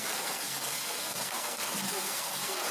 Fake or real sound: fake